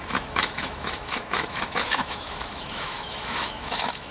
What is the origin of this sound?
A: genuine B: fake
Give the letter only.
B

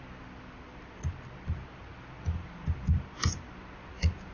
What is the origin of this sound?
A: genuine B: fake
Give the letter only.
A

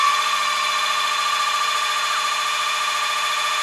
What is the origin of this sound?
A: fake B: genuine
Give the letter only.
B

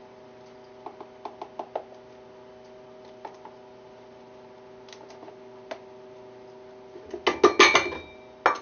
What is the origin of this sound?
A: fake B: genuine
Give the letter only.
B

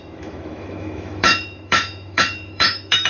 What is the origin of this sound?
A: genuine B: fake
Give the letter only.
B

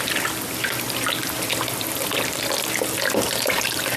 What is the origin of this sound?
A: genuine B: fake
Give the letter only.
A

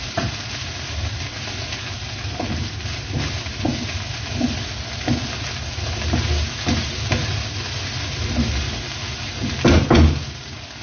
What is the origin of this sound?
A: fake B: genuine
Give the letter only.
B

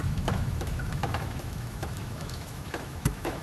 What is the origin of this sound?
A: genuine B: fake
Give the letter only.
B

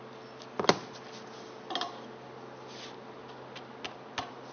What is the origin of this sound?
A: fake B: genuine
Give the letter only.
B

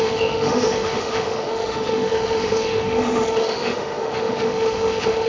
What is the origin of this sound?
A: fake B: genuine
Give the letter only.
A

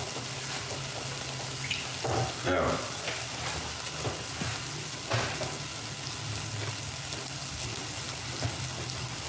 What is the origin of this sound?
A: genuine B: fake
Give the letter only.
A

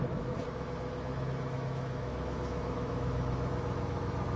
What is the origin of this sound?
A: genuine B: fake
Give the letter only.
B